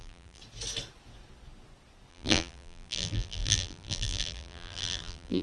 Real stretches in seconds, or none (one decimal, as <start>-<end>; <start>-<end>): 0.4-2.1